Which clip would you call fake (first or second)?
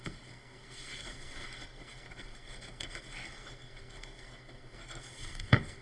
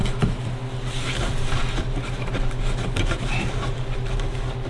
first